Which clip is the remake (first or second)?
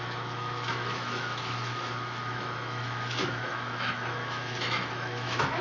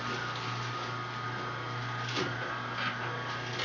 first